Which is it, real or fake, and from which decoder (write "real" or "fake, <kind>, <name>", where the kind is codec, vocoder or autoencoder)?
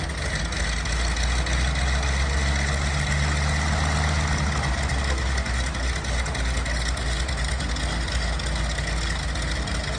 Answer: real